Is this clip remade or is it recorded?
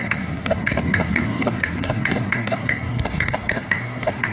remade